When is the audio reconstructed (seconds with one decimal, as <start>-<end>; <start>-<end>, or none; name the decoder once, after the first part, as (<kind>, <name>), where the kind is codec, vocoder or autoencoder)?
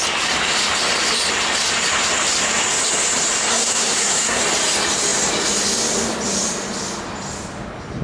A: 3.5-4.4 (codec, SNAC)